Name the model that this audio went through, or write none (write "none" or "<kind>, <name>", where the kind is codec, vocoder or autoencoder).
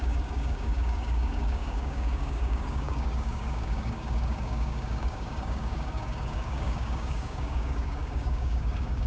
codec, DAC